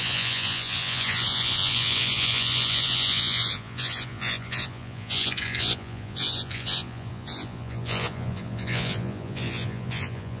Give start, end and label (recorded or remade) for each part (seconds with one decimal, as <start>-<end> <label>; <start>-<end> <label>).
0.0-10.4 remade